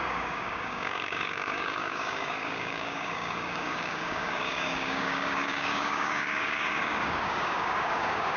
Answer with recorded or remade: remade